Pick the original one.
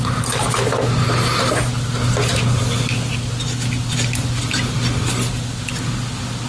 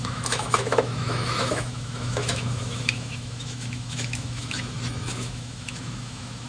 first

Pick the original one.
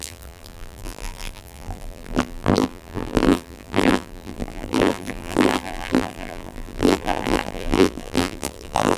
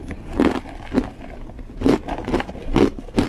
second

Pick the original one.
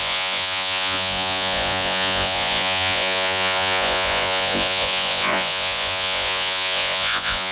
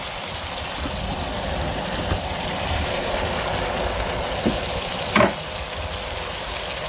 second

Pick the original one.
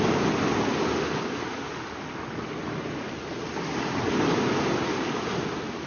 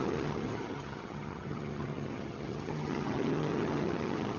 first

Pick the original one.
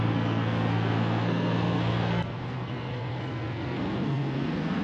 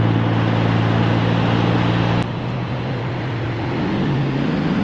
second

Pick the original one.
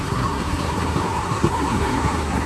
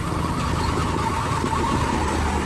second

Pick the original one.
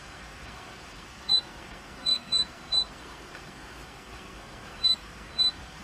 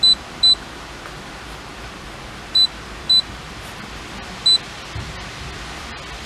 second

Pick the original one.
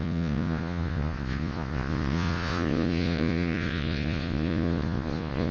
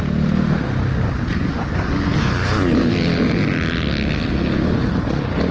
second